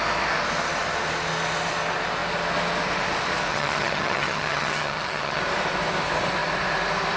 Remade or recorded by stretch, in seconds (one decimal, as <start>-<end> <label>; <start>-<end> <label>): 0.0-3.5 recorded; 3.5-5.4 remade; 5.4-7.2 recorded

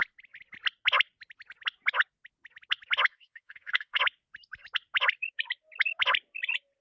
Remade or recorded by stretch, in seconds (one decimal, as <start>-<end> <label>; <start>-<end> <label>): 0.0-3.1 recorded; 3.1-4.0 remade; 4.0-6.8 recorded